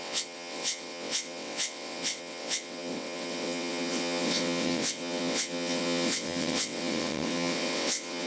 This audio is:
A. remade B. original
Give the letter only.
A